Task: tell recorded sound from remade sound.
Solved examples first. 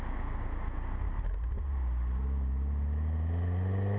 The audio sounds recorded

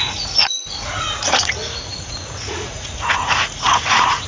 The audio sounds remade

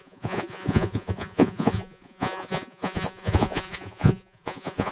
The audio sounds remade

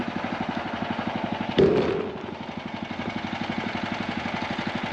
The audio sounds recorded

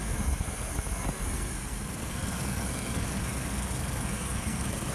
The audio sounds remade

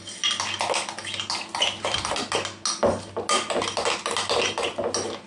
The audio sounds recorded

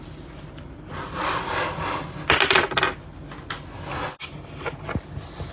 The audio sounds recorded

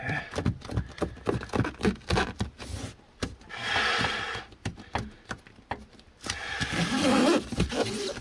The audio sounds recorded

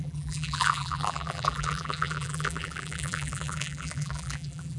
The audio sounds remade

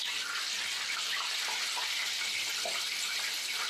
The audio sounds recorded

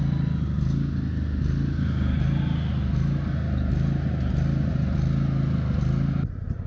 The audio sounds recorded